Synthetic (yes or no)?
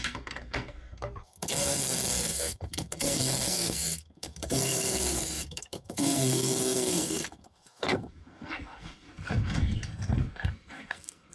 yes